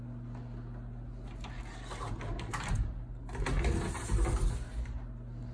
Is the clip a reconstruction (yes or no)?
no